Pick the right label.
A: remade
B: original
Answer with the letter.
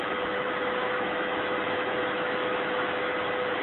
A